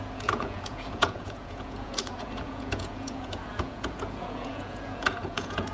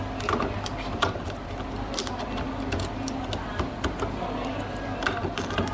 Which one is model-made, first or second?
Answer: first